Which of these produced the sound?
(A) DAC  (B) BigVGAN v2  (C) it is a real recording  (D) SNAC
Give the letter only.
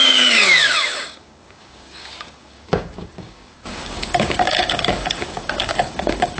A